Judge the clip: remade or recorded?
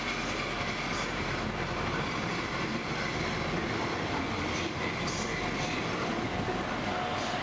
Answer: recorded